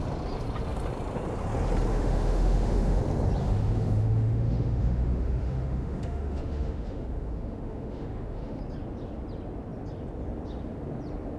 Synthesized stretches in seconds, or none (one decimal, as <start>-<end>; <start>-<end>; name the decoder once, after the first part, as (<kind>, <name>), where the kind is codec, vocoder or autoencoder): 1.9-3.0 (autoencoder, DAC-VAE); 3.4-8.6